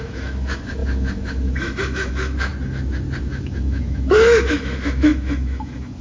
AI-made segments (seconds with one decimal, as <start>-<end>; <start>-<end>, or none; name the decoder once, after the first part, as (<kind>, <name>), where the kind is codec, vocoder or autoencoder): 0.0-2.5 (autoencoder, DAC-VAE); 3.2-6.0